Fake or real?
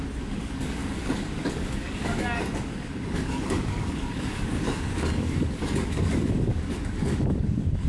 fake